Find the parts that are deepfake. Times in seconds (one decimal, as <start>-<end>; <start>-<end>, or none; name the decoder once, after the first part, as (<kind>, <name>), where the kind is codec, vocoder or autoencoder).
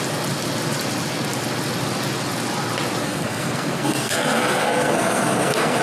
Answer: 3.0-5.8 (codec, SNAC)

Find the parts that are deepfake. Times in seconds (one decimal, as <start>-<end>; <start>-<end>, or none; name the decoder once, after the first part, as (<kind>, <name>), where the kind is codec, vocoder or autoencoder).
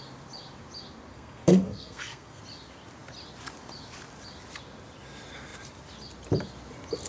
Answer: 1.1-2.4 (codec, SNAC)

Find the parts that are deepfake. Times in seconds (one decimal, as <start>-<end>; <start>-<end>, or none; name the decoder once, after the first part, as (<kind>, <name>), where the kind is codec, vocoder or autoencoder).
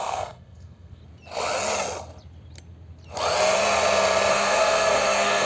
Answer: 0.0-1.0 (codec, SNAC); 4.3-5.5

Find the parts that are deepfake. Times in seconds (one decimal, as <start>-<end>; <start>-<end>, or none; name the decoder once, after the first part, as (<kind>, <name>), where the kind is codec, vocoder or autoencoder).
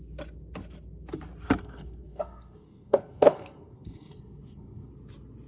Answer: 1.6-4.9 (codec, SNAC)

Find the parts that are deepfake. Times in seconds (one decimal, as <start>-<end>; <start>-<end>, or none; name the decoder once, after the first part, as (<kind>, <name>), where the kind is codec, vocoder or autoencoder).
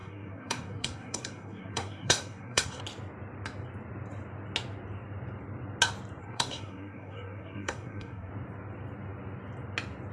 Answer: 0.0-2.8 (codec, SNAC); 6.2-8.3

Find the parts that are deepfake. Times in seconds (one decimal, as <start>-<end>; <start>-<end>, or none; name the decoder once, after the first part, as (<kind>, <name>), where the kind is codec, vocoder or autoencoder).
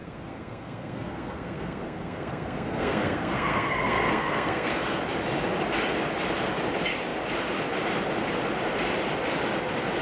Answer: 0.0-4.7 (codec, SNAC)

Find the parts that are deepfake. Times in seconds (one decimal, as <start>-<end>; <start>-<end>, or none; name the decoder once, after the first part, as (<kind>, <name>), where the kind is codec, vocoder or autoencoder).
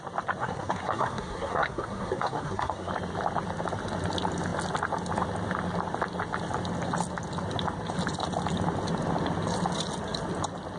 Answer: 0.4-2.9 (codec, SNAC)